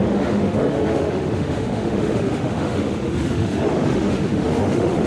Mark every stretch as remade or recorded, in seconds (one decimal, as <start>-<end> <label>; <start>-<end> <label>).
0.0-5.1 remade